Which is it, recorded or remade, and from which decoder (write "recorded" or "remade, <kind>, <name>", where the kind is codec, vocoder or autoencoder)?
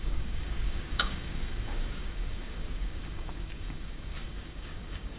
remade, codec, DAC